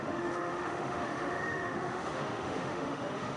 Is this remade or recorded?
remade